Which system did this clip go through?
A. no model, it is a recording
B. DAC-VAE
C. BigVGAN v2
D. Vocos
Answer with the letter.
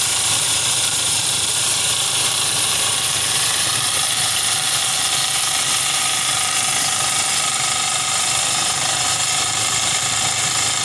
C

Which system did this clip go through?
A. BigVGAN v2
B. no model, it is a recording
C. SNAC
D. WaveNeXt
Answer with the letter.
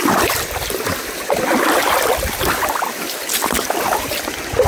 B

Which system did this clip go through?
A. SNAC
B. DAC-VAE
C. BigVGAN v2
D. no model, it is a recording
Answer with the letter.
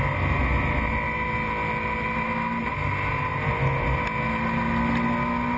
D